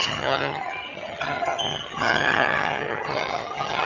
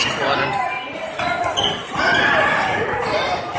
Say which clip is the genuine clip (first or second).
second